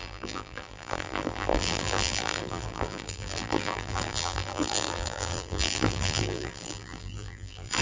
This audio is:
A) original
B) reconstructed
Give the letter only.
B